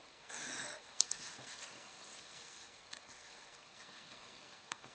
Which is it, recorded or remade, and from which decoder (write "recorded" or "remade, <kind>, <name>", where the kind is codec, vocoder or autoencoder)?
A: remade, codec, SNAC